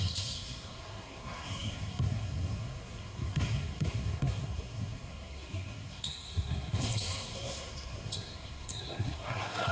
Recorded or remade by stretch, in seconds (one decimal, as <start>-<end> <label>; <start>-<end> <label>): 0.0-9.7 remade